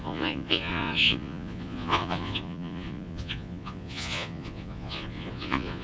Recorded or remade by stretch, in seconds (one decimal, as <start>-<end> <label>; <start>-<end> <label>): 0.0-5.8 remade